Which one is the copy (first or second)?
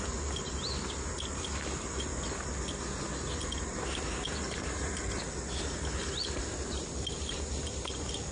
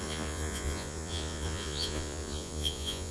second